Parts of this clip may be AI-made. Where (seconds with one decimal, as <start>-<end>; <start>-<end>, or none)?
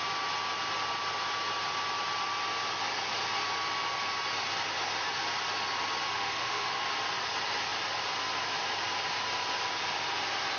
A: 6.1-6.8